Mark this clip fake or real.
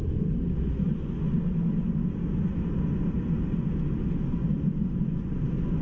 real